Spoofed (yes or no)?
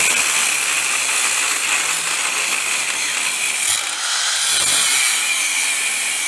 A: no